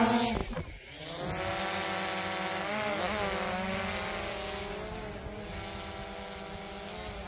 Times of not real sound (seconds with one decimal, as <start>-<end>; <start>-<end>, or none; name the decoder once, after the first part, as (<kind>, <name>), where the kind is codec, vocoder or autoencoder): none